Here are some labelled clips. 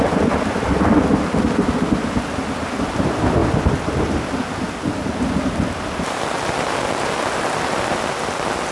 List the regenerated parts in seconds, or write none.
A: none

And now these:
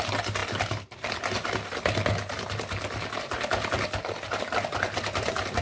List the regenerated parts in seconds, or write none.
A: 5.0-5.6 (vocoder, BigVGAN v2)

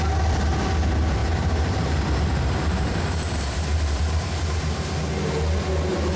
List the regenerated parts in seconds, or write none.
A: 1.2-4.9 (vocoder, BigVGAN v2)

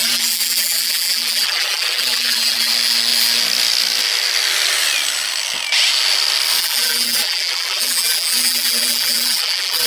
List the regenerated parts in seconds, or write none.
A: 0.0-2.7 (vocoder, BigVGAN v2); 6.6-9.9